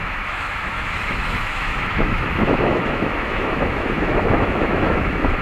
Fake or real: fake